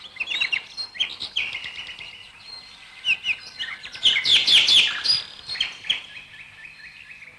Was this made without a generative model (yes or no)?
yes